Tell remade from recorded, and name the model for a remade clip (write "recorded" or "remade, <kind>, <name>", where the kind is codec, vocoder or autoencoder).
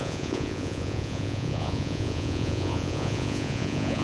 remade, vocoder, Vocos